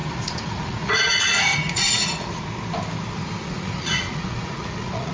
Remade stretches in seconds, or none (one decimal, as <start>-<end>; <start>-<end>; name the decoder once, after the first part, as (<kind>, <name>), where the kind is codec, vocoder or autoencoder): 0.0-2.4 (vocoder, Vocos); 3.4-5.1